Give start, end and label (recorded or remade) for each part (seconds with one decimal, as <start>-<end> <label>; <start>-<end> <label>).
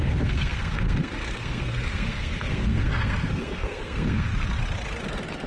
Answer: 0.0-4.3 remade; 4.3-5.5 recorded